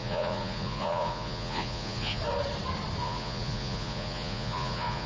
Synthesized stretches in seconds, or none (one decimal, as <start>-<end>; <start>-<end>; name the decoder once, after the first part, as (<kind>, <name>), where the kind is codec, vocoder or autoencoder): 0.0-2.2 (vocoder, Vocos); 3.0-5.1

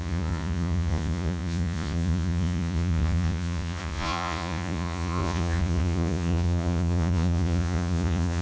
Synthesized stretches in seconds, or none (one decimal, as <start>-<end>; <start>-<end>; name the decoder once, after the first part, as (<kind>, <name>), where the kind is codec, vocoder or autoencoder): 0.0-8.4 (vocoder, Vocos)

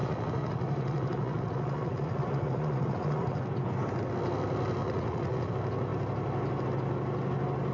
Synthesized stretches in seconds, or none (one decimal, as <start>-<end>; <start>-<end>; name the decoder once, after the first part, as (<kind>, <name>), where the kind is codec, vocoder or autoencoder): 0.0-3.4 (vocoder, Vocos); 4.8-5.5

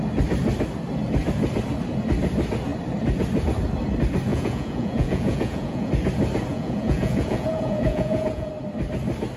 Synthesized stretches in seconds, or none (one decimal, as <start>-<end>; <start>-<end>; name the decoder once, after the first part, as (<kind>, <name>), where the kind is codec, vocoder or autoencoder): 4.3-5.9 (vocoder, Vocos); 6.5-8.5

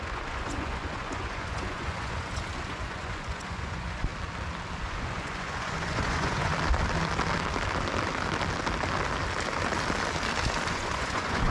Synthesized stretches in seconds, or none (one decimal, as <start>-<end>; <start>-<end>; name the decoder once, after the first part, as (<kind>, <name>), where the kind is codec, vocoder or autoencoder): 0.0-4.1 (vocoder, Vocos); 4.8-6.5; 10.7-11.5